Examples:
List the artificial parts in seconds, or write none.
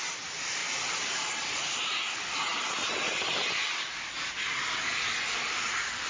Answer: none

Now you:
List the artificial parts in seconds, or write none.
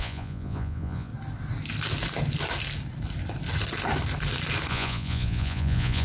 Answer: 0.0-1.1; 4.7-6.0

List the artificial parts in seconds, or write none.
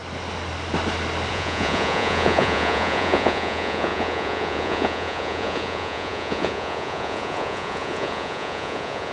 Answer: 1.3-9.1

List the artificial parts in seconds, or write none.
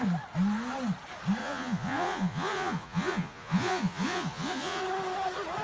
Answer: 1.4-4.8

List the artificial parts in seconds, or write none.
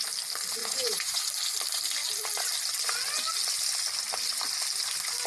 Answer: 0.6-1.2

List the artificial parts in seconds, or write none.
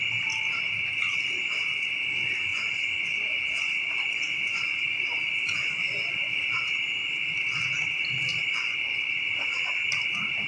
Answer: 2.5-6.4; 8.3-9.1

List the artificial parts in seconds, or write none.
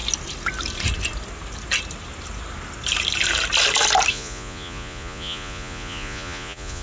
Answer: 4.1-6.8